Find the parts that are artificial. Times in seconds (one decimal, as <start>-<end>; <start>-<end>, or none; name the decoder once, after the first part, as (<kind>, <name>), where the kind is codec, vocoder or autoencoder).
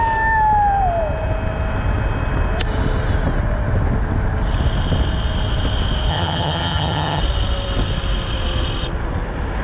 6.1-7.2 (vocoder, HiFi-GAN)